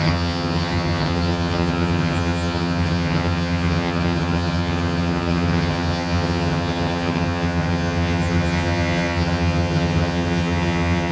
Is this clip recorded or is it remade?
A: remade